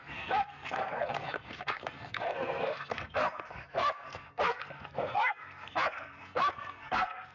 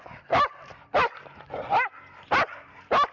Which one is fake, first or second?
first